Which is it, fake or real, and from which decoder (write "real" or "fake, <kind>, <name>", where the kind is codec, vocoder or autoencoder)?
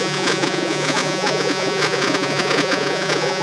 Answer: fake, vocoder, Vocos